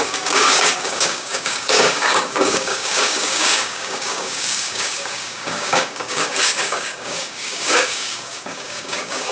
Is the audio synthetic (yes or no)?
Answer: yes